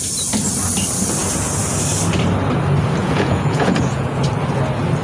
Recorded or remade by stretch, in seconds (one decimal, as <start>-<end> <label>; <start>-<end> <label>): 0.0-3.0 recorded; 3.0-4.2 remade; 4.2-5.0 recorded